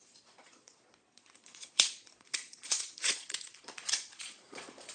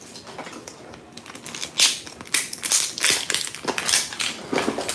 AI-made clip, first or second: first